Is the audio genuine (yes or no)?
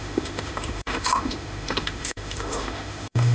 no